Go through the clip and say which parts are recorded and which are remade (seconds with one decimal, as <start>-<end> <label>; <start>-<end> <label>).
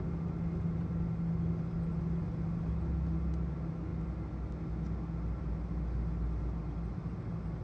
0.0-7.6 recorded